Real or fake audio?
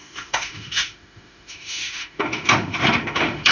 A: fake